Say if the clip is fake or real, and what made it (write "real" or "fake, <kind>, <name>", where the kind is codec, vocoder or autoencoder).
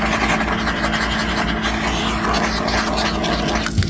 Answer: real